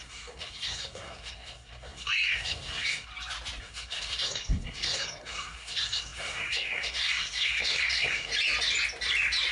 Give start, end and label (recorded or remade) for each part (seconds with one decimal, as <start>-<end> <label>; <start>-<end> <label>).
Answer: 0.0-3.1 remade; 3.1-3.6 recorded; 3.6-8.3 remade; 8.3-9.5 recorded